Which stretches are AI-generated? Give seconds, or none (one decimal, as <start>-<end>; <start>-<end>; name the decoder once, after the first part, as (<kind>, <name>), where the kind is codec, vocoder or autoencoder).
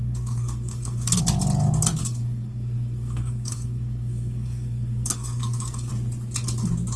0.0-1.2 (codec, SNAC); 2.0-5.9